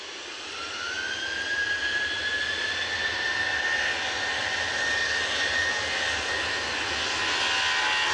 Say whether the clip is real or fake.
real